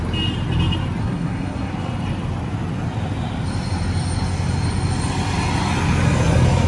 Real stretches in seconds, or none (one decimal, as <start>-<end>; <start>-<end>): 0.0-1.0; 1.7-6.7